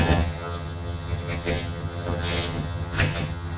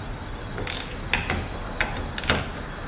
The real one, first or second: second